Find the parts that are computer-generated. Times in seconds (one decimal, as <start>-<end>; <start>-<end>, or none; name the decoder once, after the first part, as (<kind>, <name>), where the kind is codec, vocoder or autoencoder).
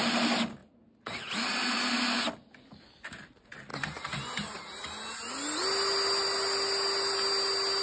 none